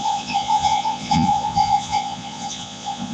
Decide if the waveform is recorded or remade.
remade